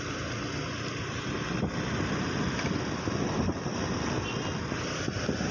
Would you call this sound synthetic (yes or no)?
no